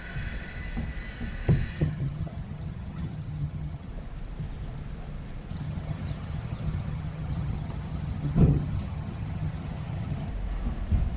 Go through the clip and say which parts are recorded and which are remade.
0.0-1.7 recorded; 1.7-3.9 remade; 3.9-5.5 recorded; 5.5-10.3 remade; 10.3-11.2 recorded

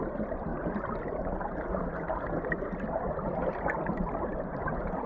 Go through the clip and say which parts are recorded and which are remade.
0.0-5.1 recorded

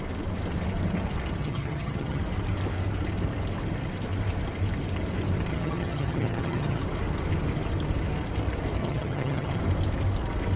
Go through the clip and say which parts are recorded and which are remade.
0.0-1.4 recorded; 1.4-2.2 remade; 2.2-5.5 recorded; 5.5-6.8 remade; 6.8-8.8 recorded; 8.8-9.6 remade; 9.6-10.6 recorded

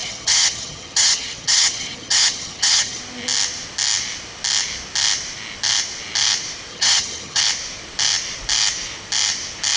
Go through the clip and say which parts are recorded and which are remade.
0.0-3.0 remade; 3.0-6.7 recorded; 6.7-7.4 remade; 7.4-9.8 recorded

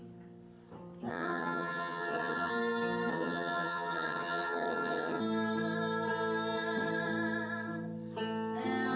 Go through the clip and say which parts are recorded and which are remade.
0.0-1.1 recorded; 1.1-2.5 remade; 2.5-3.1 recorded; 3.1-5.2 remade; 5.2-9.0 recorded

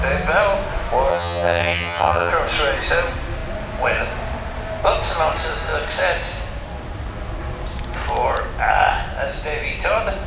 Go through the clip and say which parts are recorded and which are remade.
0.0-1.1 recorded; 1.1-2.3 remade; 2.3-10.3 recorded